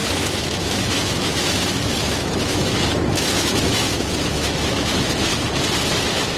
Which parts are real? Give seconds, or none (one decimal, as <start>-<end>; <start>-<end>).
5.3-5.9